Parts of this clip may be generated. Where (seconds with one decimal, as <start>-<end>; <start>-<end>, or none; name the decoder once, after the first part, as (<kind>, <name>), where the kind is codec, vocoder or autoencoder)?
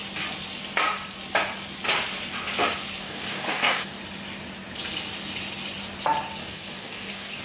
3.0-4.0 (codec, DAC); 6.4-7.4